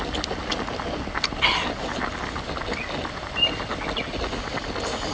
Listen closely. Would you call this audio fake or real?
real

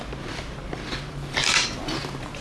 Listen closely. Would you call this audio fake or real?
fake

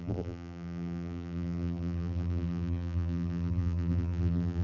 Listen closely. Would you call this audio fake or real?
fake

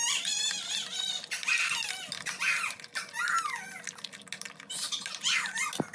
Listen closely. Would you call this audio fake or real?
real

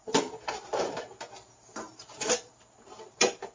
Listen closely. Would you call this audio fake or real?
fake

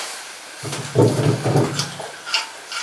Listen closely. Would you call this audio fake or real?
real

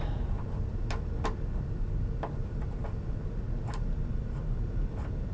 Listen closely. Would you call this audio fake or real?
real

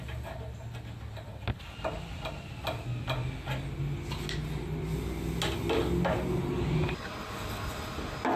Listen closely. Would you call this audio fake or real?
real